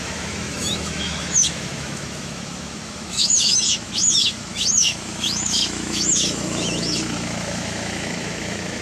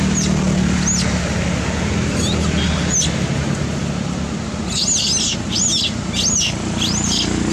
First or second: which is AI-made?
first